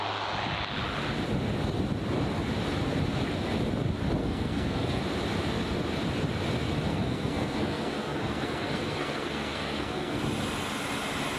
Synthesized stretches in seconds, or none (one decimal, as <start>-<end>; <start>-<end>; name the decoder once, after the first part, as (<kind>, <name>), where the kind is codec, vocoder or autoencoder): 4.2-5.0 (codec, SNAC); 6.9-10.2